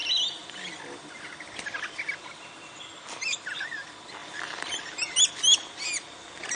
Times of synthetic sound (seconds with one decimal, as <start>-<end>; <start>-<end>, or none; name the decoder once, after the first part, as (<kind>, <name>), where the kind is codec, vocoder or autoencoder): none